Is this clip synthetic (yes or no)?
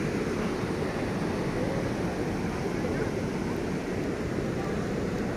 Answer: no